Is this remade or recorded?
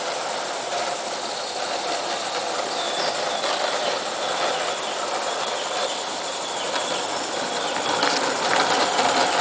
recorded